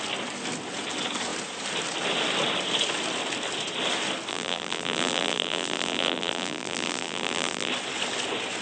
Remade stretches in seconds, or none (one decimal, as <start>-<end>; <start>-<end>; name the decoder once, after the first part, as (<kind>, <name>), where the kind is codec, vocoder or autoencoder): 4.3-7.7 (vocoder, BigVGAN v2)